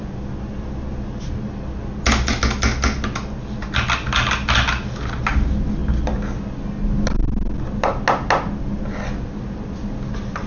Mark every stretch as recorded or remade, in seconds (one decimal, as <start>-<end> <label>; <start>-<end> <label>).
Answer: 0.0-10.5 recorded